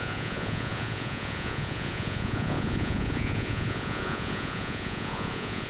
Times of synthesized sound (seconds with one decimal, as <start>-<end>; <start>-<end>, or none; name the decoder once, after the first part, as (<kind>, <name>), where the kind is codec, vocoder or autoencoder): 0.0-5.7 (vocoder, Vocos)